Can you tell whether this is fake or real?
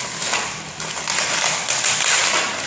real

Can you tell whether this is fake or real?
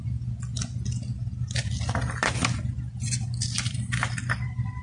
real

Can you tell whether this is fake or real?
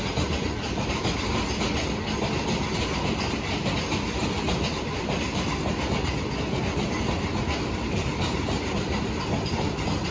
real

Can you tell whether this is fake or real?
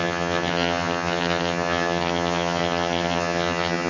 fake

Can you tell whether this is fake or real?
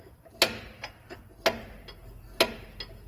real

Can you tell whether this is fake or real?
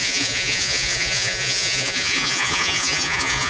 fake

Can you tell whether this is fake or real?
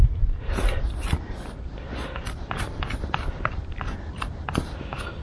real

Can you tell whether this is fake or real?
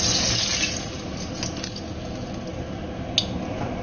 real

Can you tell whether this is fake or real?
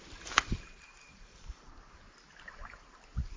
real